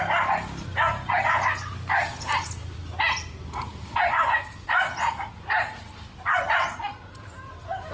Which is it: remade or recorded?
recorded